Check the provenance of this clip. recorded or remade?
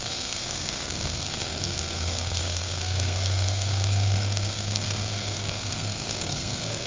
remade